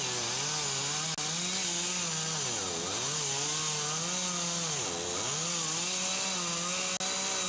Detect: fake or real real